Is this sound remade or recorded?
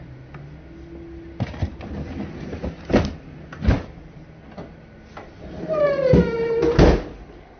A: recorded